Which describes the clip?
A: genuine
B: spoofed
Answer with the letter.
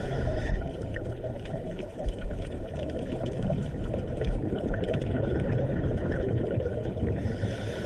B